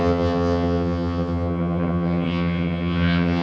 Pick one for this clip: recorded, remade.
remade